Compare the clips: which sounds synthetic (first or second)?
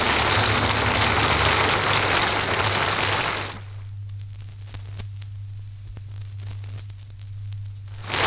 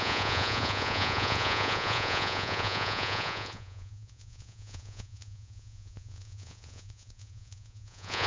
second